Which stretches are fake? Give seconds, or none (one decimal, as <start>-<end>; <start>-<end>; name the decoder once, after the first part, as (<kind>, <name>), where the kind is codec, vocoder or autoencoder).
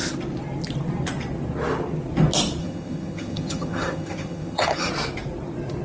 2.6-4.9 (vocoder, HiFi-GAN)